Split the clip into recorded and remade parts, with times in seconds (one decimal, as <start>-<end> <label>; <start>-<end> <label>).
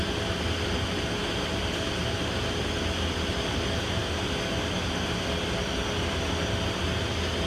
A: 0.0-7.5 recorded